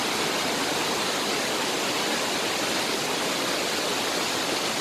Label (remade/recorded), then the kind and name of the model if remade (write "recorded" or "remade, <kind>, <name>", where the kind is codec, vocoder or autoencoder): recorded